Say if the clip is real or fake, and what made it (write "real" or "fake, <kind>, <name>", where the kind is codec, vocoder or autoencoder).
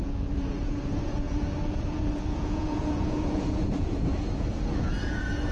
fake, vocoder, Vocos